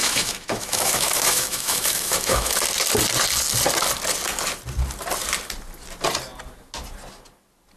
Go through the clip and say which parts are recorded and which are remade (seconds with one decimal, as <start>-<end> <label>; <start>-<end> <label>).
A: 0.0-2.6 remade; 2.6-7.8 recorded